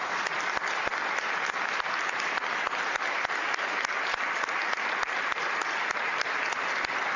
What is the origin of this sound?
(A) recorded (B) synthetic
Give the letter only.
A